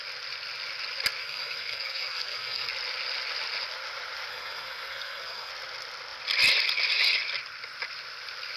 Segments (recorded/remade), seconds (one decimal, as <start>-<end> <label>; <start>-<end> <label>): 0.0-1.2 recorded; 1.2-2.7 remade; 2.7-4.3 recorded; 4.3-5.5 remade; 5.5-8.6 recorded